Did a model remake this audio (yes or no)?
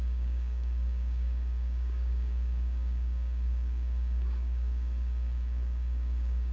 yes